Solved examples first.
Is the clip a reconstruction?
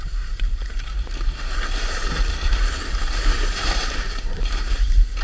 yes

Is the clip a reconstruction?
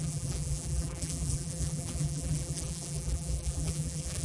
yes